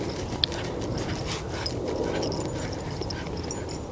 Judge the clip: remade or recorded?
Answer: recorded